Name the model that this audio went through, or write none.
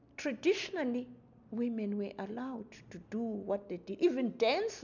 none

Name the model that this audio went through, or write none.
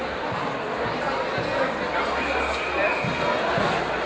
none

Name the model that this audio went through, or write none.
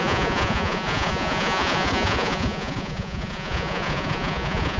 vocoder, Vocos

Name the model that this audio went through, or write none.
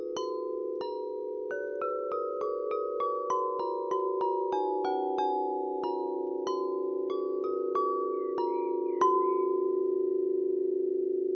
none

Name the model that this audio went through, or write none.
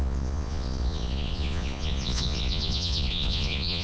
vocoder, Vocos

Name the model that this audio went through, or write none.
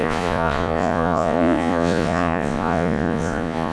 vocoder, Vocos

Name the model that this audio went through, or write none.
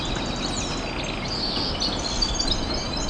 none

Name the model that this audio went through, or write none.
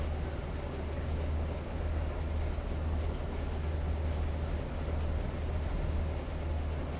none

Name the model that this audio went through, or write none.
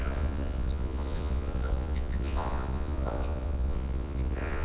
vocoder, Vocos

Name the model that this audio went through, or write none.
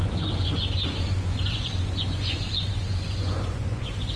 vocoder, Vocos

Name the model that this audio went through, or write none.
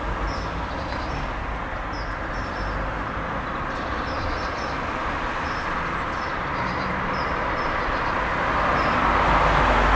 none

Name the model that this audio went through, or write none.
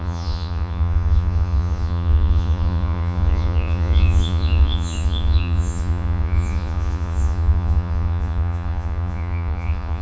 vocoder, Vocos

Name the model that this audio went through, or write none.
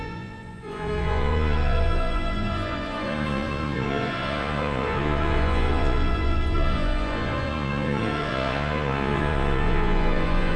vocoder, Vocos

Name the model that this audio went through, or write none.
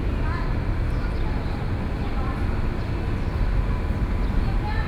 none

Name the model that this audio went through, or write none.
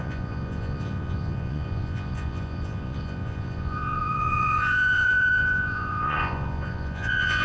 vocoder, Vocos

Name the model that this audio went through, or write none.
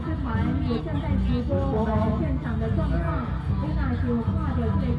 none